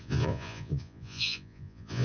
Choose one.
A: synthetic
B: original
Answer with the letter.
A